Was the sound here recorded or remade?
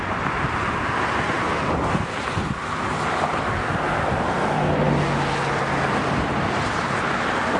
recorded